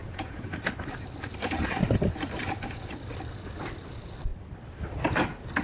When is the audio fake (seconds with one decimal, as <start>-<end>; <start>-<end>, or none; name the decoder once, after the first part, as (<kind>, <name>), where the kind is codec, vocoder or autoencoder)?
0.0-0.5 (vocoder, Vocos)